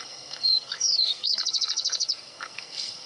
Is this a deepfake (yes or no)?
yes